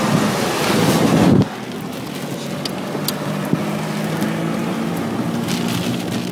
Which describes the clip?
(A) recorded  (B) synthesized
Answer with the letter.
A